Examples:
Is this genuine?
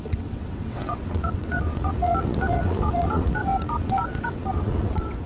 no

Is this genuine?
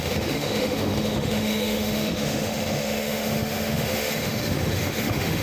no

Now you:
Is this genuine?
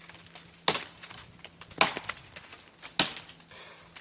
yes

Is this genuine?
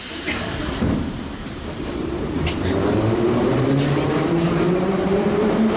no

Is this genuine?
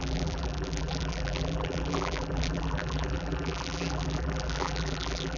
no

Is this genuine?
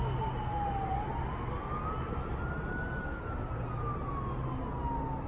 yes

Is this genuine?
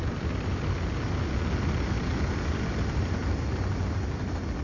yes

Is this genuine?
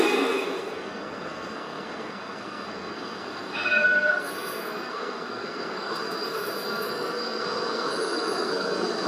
no